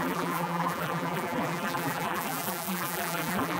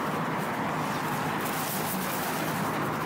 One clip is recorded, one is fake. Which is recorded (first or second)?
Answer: second